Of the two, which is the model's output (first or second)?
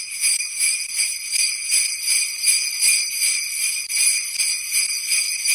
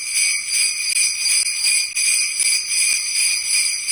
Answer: first